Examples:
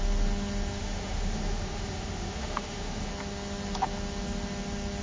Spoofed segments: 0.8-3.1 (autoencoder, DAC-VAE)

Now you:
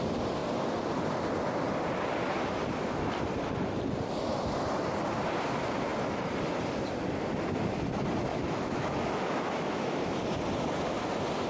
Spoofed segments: 8.3-10.2 (autoencoder, DAC-VAE)

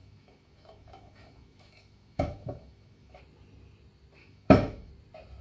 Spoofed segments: 0.0-3.2 (autoencoder, DAC-VAE); 4.2-4.9

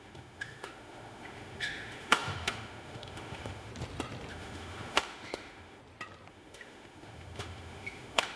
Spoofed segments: 0.0-3.7 (autoencoder, DAC-VAE); 4.3-5.8; 6.3-8.4